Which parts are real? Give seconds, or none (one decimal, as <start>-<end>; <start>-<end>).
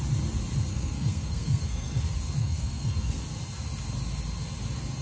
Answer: 0.0-0.7; 2.0-2.4; 3.2-5.0